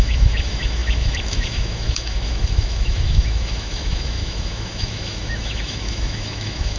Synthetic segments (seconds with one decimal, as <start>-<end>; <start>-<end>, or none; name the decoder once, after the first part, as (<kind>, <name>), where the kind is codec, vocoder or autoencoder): 0.0-6.8 (autoencoder, DAC-VAE)